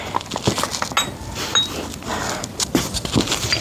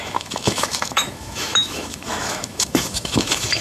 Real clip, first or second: first